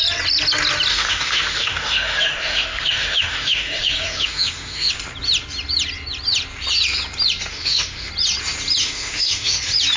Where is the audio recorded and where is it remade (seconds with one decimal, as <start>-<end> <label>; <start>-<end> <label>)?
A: 0.0-0.9 recorded; 0.9-4.9 remade; 4.9-7.5 recorded; 7.5-8.1 remade; 8.1-8.8 recorded; 8.8-9.6 remade; 9.6-10.0 recorded